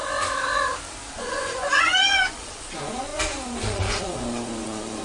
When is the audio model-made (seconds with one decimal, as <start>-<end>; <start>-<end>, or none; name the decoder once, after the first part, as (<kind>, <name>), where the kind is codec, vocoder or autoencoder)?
1.1-5.0 (vocoder, Vocos)